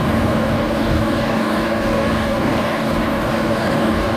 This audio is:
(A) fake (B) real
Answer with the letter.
A